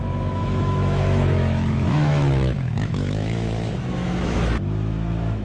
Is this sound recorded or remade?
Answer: remade